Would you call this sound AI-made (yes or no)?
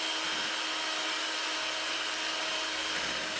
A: no